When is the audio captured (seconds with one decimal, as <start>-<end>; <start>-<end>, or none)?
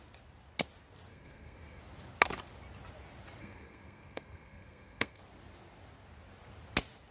0.0-1.1; 1.8-3.4; 5.2-7.1